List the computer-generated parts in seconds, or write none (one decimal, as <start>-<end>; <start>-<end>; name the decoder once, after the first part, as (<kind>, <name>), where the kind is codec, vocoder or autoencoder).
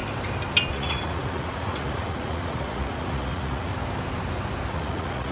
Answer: 0.7-3.7 (vocoder, Vocos); 4.7-5.3